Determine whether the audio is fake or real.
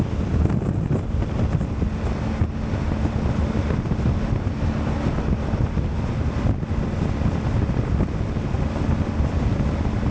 real